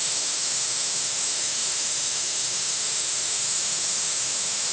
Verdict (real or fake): fake